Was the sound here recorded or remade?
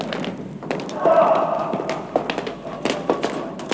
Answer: recorded